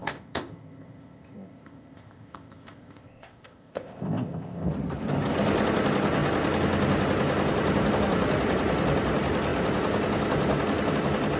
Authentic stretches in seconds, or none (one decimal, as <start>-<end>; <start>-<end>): 4.7-11.4